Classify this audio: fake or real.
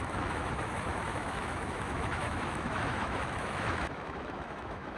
fake